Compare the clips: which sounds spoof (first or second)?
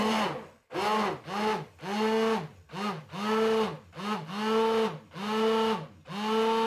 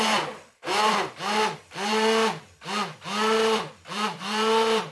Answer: second